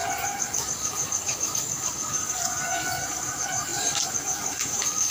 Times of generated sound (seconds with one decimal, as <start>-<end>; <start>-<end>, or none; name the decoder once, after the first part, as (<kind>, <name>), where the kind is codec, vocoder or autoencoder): 0.0-5.1 (codec, DAC)